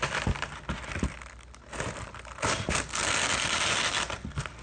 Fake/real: real